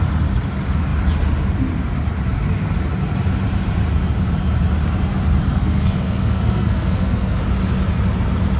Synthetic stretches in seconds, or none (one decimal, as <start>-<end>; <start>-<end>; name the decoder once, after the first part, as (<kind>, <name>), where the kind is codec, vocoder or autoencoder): 5.5-7.4 (codec, SNAC)